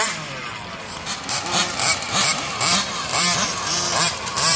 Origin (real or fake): fake